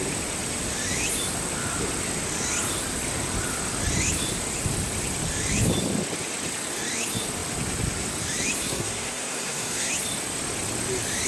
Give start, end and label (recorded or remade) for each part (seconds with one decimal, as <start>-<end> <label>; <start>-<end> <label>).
0.0-8.6 recorded; 8.6-9.9 remade; 9.9-11.3 recorded